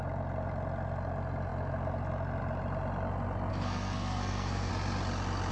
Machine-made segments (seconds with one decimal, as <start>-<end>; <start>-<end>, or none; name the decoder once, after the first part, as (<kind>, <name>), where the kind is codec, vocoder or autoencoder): 3.5-4.7 (codec, SNAC)